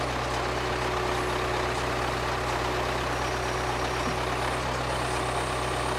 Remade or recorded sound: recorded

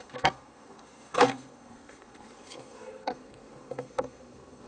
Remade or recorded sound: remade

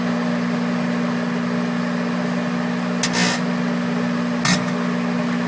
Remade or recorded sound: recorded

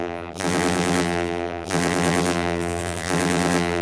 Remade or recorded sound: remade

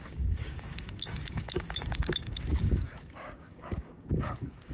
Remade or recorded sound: remade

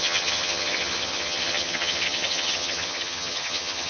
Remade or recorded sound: remade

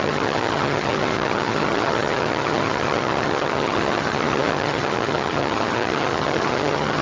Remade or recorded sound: remade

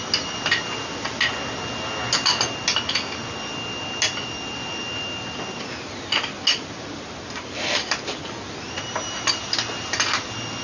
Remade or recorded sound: recorded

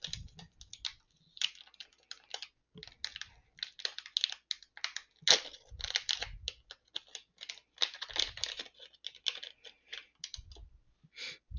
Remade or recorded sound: recorded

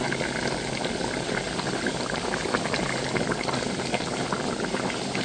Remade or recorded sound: recorded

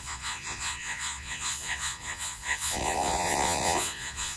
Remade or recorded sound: remade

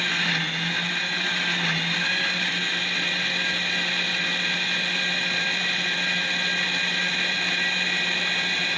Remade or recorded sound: recorded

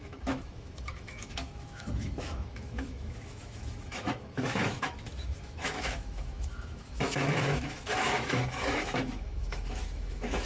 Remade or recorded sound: remade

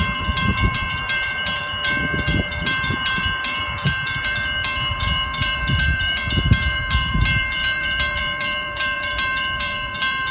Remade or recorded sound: remade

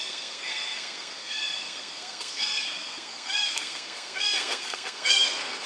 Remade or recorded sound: remade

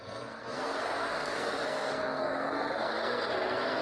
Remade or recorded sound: remade